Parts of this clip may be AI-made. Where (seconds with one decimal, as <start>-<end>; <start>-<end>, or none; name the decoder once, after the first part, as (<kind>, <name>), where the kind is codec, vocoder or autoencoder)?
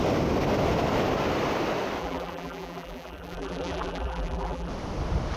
2.0-4.7 (vocoder, BigVGAN v2)